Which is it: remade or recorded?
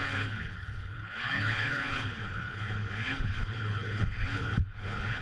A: remade